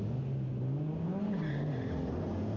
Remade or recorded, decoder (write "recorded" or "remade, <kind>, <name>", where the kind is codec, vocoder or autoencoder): recorded